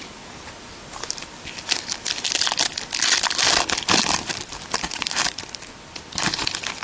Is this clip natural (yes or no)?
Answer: yes